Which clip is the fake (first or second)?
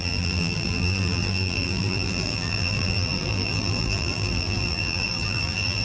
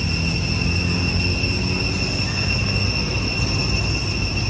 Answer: first